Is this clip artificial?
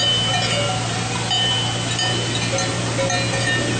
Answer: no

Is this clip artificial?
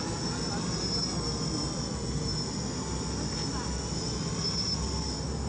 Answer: no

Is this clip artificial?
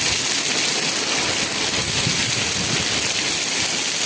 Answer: no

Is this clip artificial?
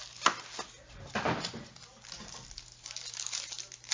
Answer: no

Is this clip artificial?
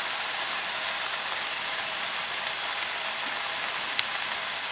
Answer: no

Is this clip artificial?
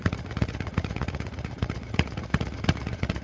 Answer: yes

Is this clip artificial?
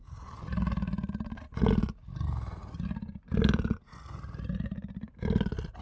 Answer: no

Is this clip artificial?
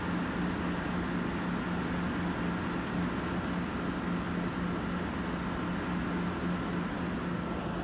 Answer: no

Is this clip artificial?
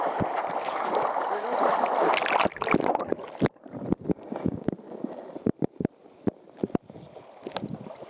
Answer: no